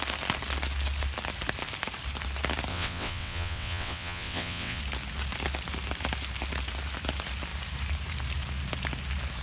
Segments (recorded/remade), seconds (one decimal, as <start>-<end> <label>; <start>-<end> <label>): 0.0-2.7 recorded; 2.7-4.8 remade; 4.8-9.4 recorded